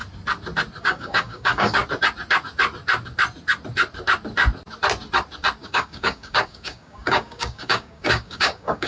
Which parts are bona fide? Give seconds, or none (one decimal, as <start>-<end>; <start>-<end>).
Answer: 0.0-0.8; 1.8-5.6